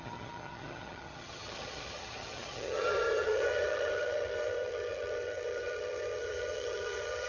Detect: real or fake fake